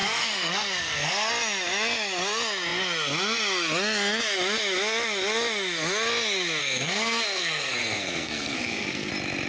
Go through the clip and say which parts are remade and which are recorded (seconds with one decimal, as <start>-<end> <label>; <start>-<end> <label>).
0.0-1.3 remade; 1.3-6.6 recorded; 6.6-9.1 remade; 9.1-9.5 recorded